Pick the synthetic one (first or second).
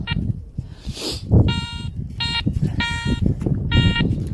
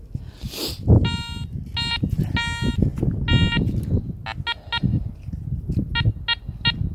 first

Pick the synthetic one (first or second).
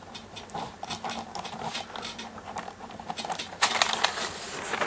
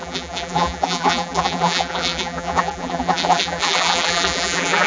second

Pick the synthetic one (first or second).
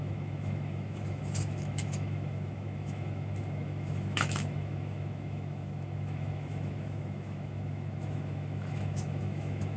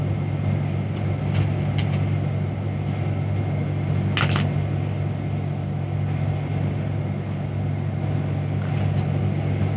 first